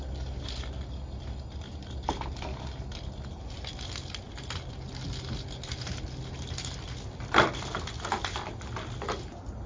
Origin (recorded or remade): recorded